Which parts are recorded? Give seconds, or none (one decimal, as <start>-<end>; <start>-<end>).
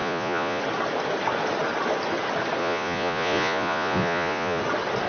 0.6-2.6; 4.6-5.1